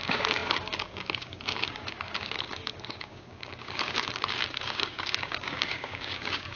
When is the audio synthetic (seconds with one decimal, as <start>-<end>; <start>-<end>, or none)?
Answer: 0.0-6.6